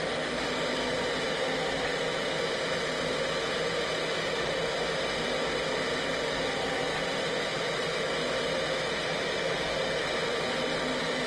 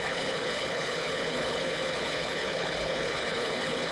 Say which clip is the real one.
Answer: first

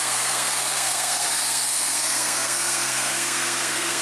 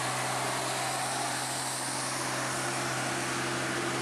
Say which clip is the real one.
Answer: second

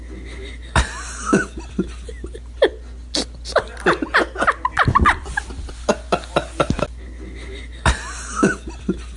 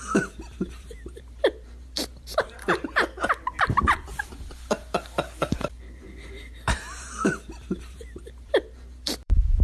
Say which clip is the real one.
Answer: first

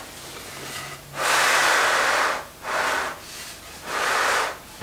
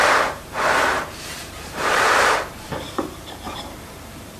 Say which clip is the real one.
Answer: first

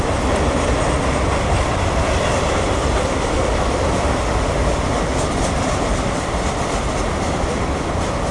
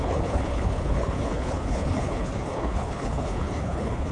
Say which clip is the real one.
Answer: first